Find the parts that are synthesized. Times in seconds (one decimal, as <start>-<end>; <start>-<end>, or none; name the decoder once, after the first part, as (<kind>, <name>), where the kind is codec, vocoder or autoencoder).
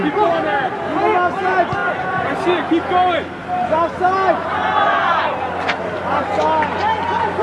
none